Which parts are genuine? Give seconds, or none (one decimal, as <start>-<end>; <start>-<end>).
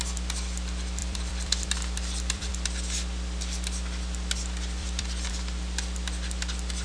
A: 0.0-1.0; 2.5-4.8; 5.3-6.8